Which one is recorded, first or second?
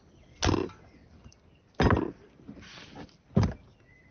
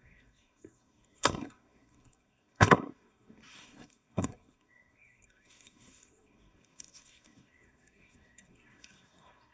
first